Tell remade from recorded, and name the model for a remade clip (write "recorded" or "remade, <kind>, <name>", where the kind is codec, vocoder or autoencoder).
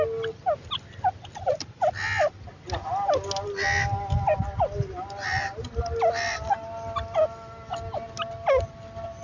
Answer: recorded